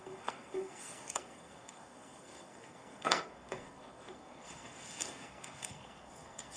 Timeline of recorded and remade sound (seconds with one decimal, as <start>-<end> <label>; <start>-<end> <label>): 0.0-6.6 remade